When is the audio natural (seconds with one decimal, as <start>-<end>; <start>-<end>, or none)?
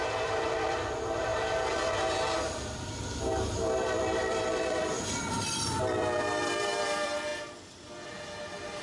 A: 1.3-2.4; 7.3-8.8